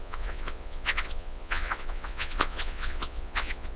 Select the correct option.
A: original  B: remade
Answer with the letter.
B